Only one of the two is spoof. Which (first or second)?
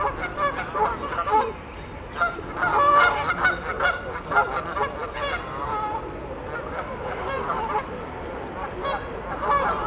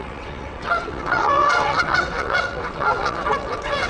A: second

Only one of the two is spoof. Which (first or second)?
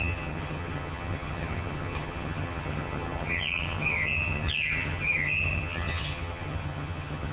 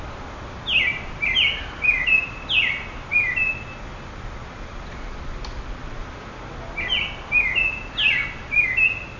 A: first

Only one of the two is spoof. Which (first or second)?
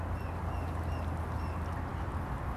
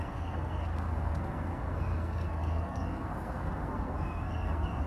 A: second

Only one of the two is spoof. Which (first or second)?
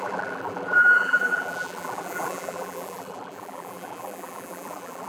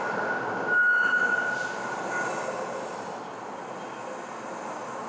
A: first